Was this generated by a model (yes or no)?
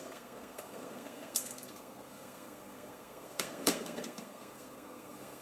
yes